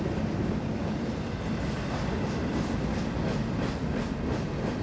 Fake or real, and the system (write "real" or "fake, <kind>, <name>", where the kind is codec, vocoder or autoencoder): real